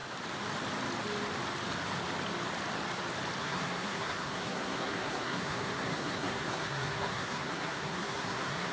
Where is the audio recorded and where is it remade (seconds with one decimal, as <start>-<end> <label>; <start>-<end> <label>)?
0.0-3.4 recorded; 3.4-8.7 remade